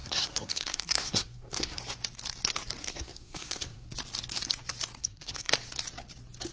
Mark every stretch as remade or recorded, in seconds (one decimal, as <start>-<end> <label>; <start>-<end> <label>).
0.0-1.8 remade; 1.8-2.8 recorded; 2.8-3.9 remade; 3.9-5.0 recorded; 5.0-5.5 remade; 5.5-6.5 recorded